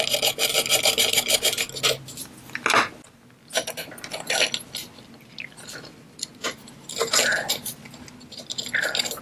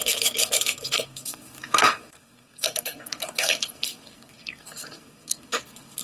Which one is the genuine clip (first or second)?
first